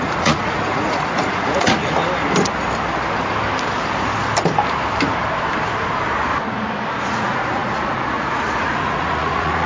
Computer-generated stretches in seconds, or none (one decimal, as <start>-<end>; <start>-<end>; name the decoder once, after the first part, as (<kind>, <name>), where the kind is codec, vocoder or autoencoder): 0.0-2.0 (vocoder, Vocos); 7.1-9.7